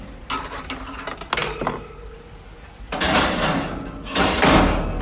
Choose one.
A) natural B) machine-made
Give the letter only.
A